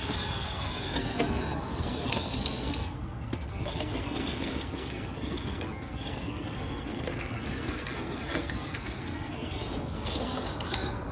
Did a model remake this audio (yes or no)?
yes